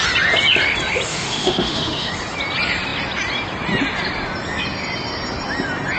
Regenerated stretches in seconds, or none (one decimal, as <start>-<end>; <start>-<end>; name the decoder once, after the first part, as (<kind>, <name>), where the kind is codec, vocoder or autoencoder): 1.1-2.1 (autoencoder, DAC-VAE)